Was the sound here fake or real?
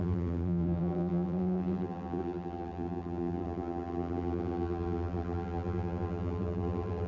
fake